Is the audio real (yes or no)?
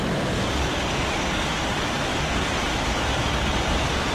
yes